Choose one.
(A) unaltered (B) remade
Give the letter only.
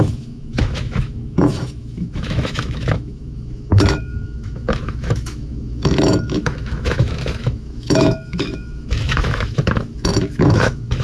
B